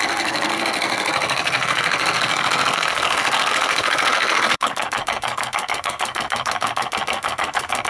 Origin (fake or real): fake